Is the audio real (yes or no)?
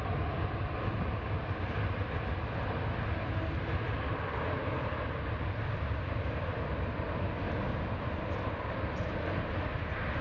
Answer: yes